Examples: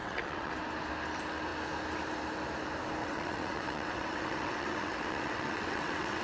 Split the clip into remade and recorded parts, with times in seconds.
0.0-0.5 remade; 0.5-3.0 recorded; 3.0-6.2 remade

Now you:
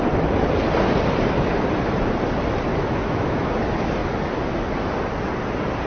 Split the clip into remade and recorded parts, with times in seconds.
0.0-2.7 recorded; 2.7-3.5 remade; 3.5-5.9 recorded

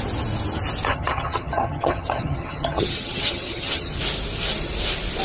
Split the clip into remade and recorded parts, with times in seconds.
0.0-0.9 recorded; 0.9-4.0 remade; 4.0-5.2 recorded

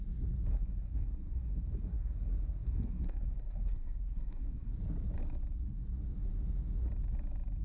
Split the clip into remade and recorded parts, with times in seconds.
0.0-0.5 recorded; 0.5-4.7 remade; 4.7-7.6 recorded

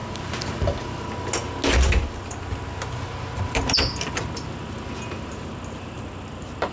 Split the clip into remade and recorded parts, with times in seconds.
0.0-6.7 recorded

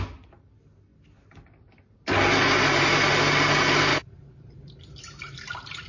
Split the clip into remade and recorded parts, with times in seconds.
0.0-3.9 recorded; 3.9-4.8 remade; 4.8-5.9 recorded